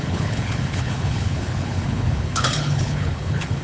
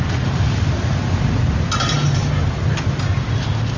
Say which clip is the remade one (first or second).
first